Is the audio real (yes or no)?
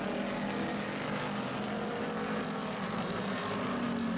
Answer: yes